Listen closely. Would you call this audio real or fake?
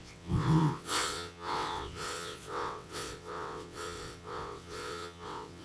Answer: fake